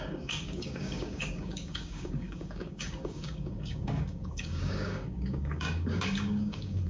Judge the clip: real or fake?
fake